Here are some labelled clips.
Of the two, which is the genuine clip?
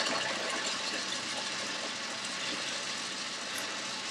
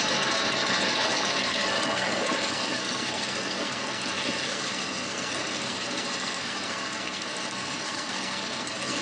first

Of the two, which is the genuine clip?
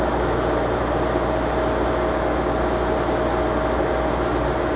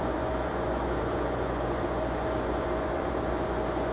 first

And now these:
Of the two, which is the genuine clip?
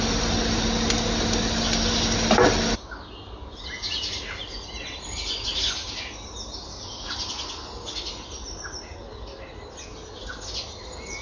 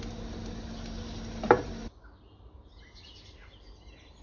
first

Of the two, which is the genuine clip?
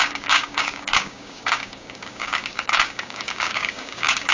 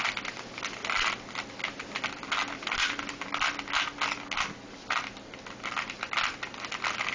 second